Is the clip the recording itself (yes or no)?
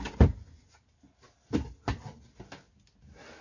yes